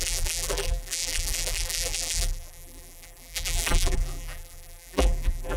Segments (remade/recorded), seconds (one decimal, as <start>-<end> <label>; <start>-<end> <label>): 0.0-5.6 remade